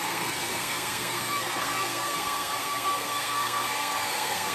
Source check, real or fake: fake